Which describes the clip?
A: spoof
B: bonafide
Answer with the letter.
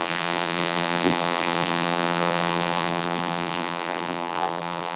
A